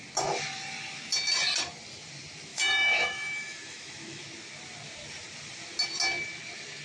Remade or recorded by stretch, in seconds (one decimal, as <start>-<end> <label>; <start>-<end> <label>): 0.0-2.5 recorded; 2.5-4.2 remade; 4.2-6.8 recorded